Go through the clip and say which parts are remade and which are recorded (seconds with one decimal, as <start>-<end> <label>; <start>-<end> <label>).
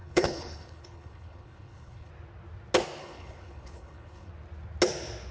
0.0-2.1 remade; 2.1-3.0 recorded; 3.0-4.3 remade; 4.3-5.3 recorded